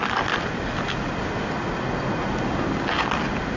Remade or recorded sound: recorded